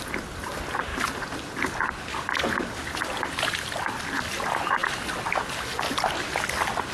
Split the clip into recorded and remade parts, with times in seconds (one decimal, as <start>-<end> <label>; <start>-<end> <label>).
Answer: 0.0-6.9 recorded